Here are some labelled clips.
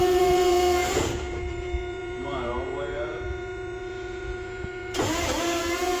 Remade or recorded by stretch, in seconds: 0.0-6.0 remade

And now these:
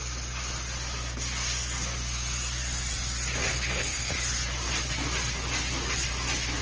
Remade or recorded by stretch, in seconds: 0.0-3.5 recorded; 3.5-4.1 remade; 4.1-6.6 recorded

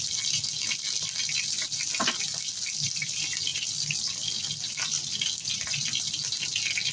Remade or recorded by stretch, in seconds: 0.0-6.9 recorded

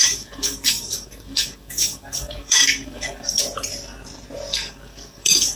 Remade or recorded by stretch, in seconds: 0.0-3.4 remade; 3.4-4.5 recorded; 4.5-5.6 remade

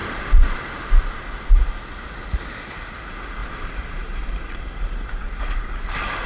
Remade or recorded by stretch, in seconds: 0.0-0.9 remade; 0.9-3.4 recorded; 3.4-5.4 remade; 5.4-6.3 recorded

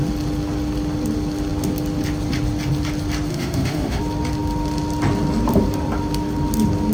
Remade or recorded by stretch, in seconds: 0.0-3.3 recorded; 3.3-4.0 remade; 4.0-6.9 recorded